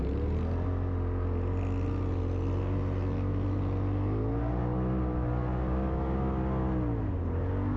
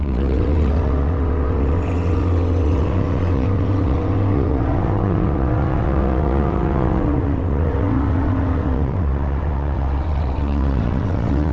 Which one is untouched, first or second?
first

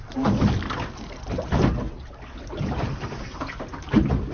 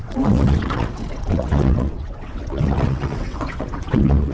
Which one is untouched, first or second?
first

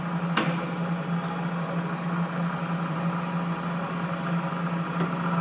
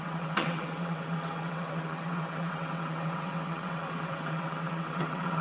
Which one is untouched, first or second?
first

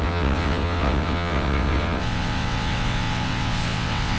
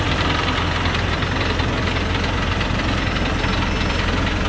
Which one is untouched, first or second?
second